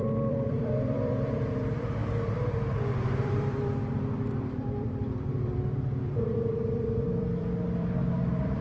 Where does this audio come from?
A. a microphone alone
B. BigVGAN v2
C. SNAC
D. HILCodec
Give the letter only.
B